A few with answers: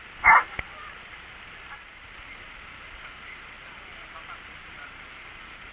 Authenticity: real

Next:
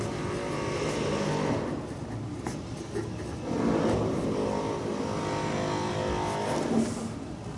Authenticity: real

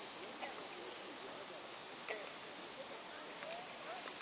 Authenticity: real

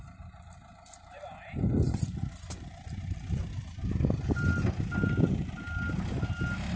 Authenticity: real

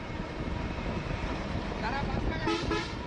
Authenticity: fake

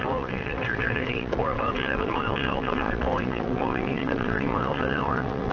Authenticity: fake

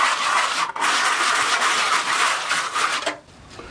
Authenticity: real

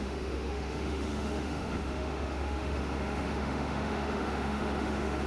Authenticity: fake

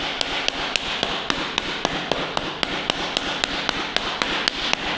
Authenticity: real